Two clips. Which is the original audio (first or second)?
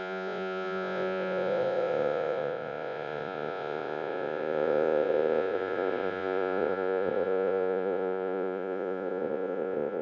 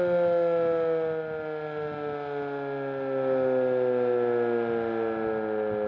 second